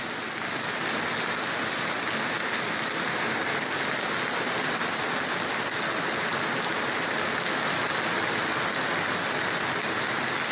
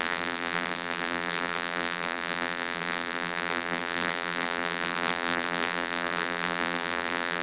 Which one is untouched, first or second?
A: first